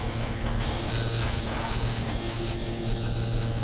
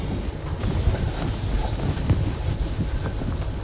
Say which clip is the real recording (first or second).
second